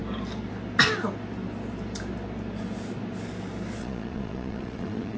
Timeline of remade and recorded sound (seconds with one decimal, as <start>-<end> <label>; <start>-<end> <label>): 0.0-3.8 recorded; 3.8-5.2 remade